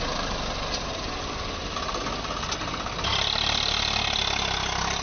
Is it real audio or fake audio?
real